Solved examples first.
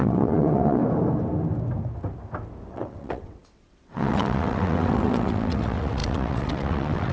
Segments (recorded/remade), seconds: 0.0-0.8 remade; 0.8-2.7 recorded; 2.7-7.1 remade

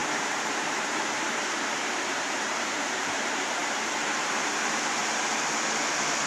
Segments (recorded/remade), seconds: 0.0-5.0 remade; 5.0-6.3 recorded

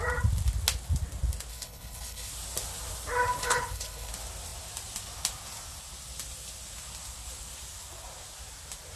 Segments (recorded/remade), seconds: 0.0-1.5 recorded; 1.5-2.3 remade; 2.3-3.4 recorded; 3.4-4.1 remade; 4.1-9.0 recorded